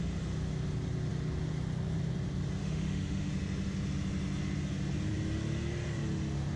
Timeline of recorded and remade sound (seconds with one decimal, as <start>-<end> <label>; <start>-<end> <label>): 0.0-2.6 recorded; 2.6-3.3 remade; 3.3-6.6 recorded